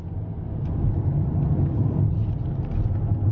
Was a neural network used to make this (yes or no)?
no